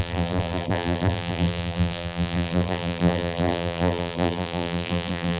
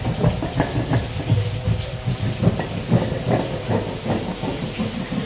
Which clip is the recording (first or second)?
second